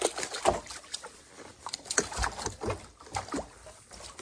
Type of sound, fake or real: real